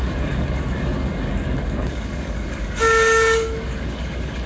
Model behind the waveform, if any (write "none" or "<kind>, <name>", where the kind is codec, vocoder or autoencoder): codec, DAC